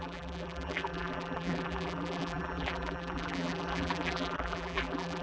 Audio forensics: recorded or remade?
remade